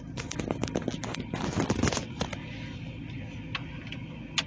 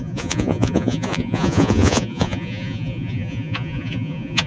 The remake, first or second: second